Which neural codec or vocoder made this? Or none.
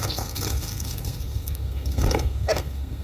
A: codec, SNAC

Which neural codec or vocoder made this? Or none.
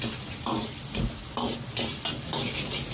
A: none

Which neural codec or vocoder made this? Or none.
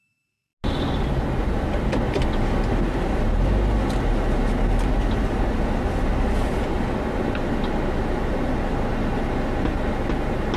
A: none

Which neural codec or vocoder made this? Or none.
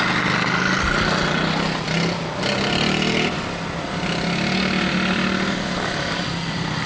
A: none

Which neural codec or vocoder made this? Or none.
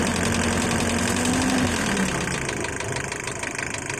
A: none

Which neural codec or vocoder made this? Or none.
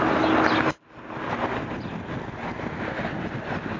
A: none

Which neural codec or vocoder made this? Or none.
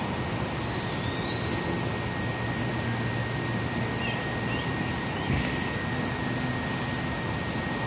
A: none